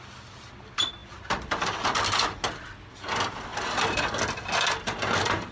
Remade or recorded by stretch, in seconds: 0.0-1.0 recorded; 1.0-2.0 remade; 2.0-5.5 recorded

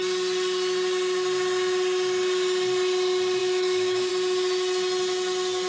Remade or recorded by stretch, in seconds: 0.0-3.4 recorded; 3.4-4.1 remade; 4.1-5.7 recorded

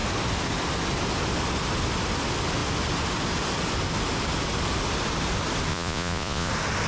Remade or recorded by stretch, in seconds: 0.0-5.7 recorded; 5.7-6.5 remade; 6.5-6.9 recorded

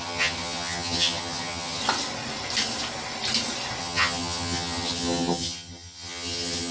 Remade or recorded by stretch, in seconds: 0.0-1.8 remade; 1.8-3.8 recorded; 3.8-6.7 remade

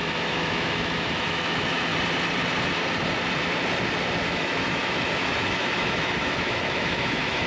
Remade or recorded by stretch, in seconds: 0.0-1.9 remade; 1.9-4.3 recorded; 4.3-7.5 remade

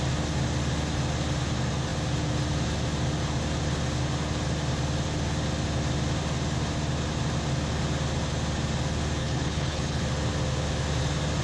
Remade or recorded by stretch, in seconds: 0.0-9.2 recorded; 9.2-10.0 remade; 10.0-11.4 recorded